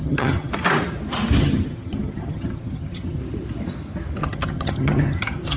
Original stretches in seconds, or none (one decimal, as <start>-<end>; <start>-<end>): 0.5-1.4; 3.2-4.2